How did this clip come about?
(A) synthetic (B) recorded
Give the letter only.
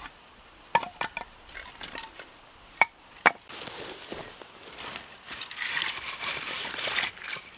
A